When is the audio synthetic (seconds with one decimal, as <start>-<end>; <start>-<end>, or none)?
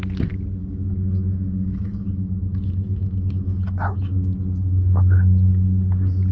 0.6-4.4